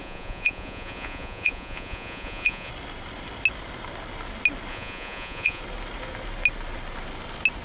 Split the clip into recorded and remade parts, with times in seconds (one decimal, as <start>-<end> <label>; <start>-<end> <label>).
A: 0.0-2.7 remade; 2.7-4.7 recorded; 4.7-5.6 remade; 5.6-7.6 recorded